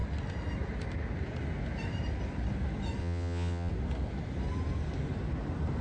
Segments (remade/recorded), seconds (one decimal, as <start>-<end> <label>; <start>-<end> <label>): 0.0-3.0 recorded; 3.0-3.7 remade; 3.7-5.8 recorded